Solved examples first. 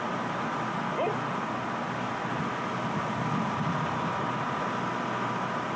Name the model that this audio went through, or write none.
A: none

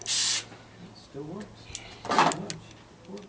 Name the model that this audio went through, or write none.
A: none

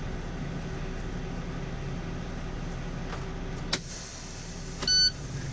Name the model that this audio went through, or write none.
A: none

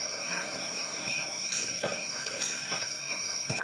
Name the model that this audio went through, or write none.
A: codec, SNAC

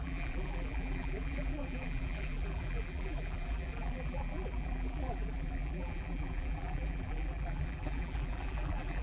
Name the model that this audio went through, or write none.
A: vocoder, BigVGAN v2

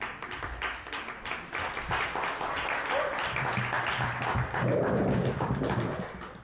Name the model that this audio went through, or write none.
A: none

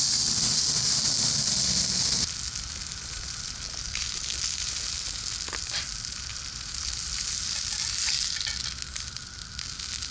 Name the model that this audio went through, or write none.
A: none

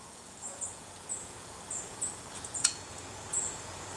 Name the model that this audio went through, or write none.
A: vocoder, Vocos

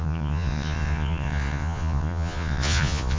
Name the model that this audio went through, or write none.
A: vocoder, Vocos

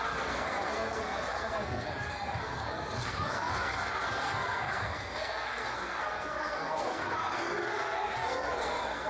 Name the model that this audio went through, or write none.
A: codec, SNAC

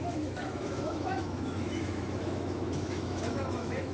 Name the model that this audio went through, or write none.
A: autoencoder, DAC-VAE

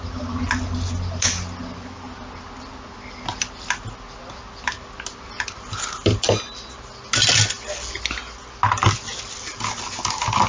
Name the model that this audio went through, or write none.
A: none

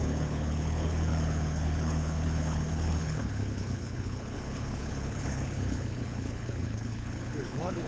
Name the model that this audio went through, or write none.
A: codec, HILCodec